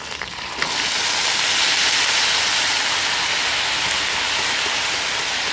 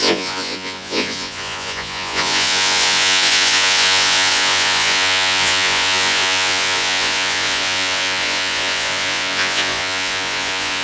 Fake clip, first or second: second